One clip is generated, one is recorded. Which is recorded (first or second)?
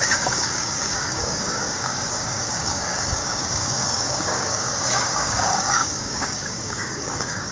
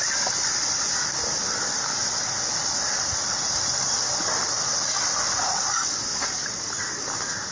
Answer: second